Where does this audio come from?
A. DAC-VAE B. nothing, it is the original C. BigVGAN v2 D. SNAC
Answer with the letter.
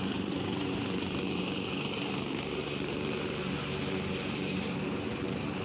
C